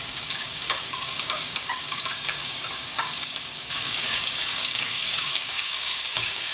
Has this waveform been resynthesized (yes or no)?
yes